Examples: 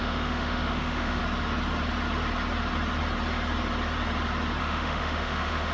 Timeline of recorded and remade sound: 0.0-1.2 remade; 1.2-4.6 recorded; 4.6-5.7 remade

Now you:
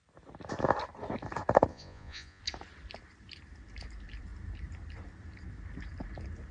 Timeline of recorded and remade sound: 0.0-1.7 recorded; 1.7-2.4 remade; 2.4-6.5 recorded

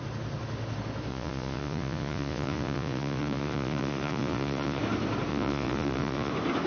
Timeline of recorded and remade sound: 0.0-1.1 recorded; 1.1-4.8 remade; 4.8-5.3 recorded; 5.3-6.3 remade; 6.3-6.7 recorded

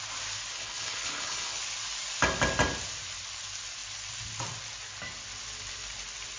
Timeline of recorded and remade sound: 0.0-0.5 recorded; 0.5-1.6 remade; 1.6-6.4 recorded

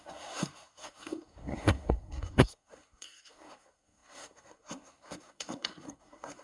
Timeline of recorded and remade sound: 0.0-6.4 remade

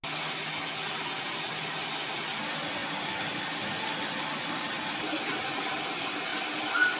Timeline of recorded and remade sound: 0.0-7.0 recorded